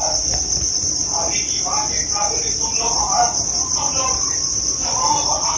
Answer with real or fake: fake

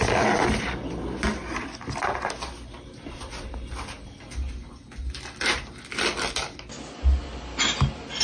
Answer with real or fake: real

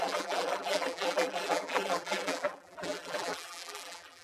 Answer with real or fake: fake